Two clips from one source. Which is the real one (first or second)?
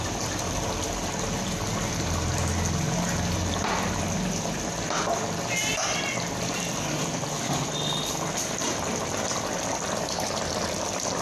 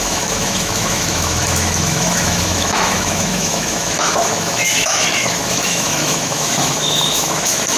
first